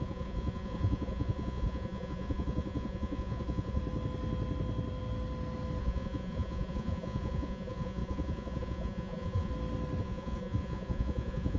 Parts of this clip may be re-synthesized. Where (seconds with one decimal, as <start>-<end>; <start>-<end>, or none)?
0.0-3.8; 5.8-9.5; 10.0-11.6